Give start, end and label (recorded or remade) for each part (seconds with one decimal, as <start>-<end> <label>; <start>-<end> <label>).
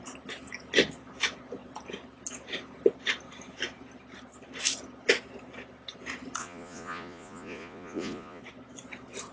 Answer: 0.0-6.4 recorded; 6.4-8.4 remade; 8.4-9.3 recorded